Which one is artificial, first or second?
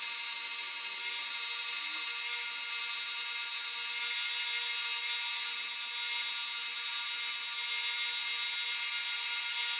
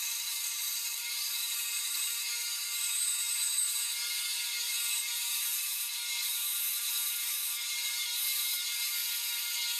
second